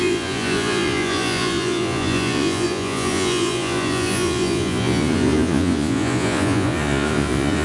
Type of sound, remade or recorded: remade